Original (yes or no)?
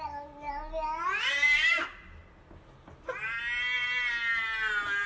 yes